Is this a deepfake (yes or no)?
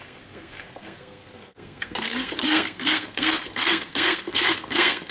yes